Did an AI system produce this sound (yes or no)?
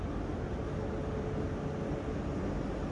no